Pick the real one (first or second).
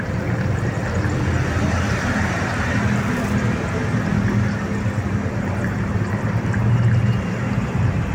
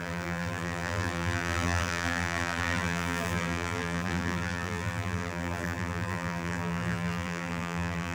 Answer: first